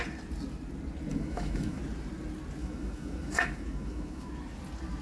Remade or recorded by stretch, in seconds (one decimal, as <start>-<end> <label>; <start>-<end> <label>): 0.0-1.1 recorded; 1.1-1.8 remade; 1.8-2.6 recorded; 2.6-4.3 remade; 4.3-5.0 recorded